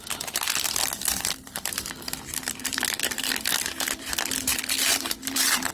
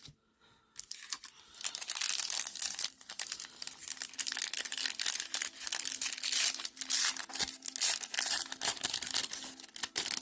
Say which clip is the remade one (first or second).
first